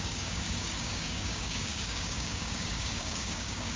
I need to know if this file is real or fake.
fake